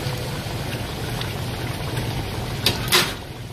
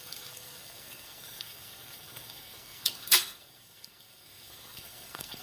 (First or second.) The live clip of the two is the first